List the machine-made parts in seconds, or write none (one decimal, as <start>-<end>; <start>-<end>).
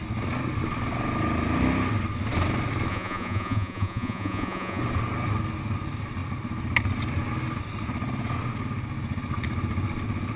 2.9-4.8